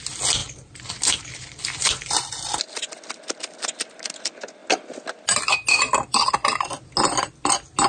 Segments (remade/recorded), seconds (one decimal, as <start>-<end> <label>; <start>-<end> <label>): 0.0-7.9 recorded